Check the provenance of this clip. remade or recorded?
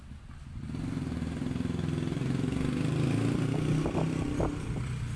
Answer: recorded